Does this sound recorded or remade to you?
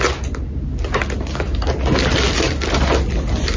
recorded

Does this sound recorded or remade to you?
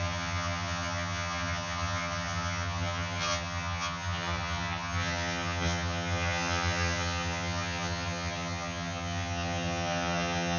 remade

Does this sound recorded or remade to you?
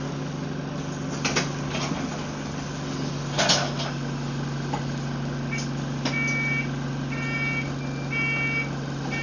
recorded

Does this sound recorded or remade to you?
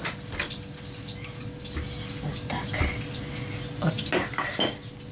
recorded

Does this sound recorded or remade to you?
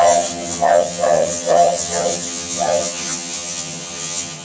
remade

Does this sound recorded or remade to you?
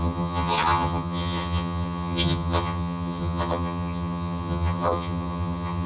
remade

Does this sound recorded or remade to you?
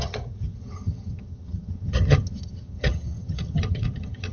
remade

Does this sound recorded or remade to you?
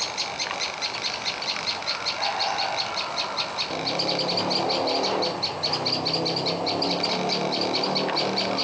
recorded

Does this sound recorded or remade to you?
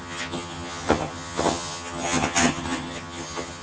remade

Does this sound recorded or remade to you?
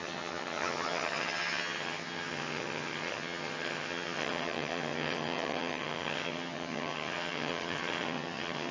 remade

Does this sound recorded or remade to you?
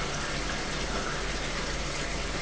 recorded